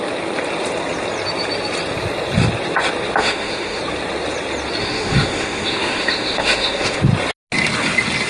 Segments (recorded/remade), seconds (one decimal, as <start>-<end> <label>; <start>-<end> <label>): 0.0-3.2 recorded; 3.2-3.8 remade; 3.8-4.8 recorded; 4.8-7.0 remade; 7.0-8.3 recorded